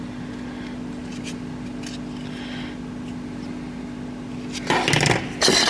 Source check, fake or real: real